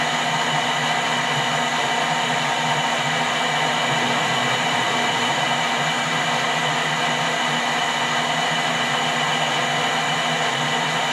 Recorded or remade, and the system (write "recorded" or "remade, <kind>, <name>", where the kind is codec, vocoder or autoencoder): recorded